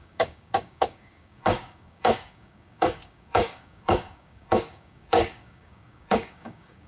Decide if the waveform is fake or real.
fake